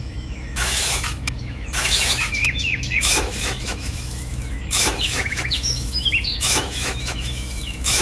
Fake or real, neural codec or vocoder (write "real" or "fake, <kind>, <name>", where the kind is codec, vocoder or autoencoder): fake, autoencoder, DAC-VAE